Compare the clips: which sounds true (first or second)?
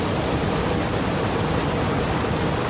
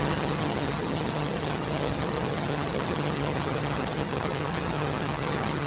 first